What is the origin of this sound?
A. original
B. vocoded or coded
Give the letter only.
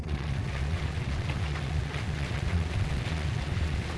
B